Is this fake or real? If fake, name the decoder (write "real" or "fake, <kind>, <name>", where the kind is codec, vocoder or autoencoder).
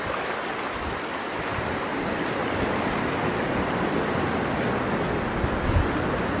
real